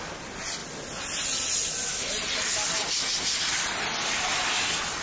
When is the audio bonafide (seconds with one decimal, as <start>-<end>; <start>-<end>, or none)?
0.0-5.0